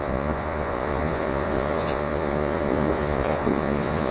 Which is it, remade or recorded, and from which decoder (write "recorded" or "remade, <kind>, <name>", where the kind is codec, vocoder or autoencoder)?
remade, vocoder, Vocos